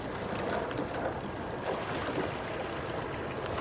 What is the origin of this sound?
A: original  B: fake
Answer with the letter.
B